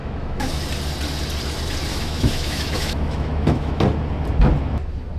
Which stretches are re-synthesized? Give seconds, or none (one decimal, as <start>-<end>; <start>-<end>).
0.0-0.6; 1.9-3.8

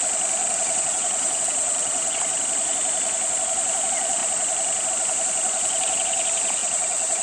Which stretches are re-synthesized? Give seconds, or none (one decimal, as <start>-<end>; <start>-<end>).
0.4-2.2; 6.6-7.2